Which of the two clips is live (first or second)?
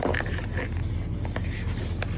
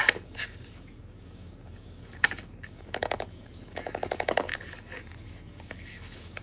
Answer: first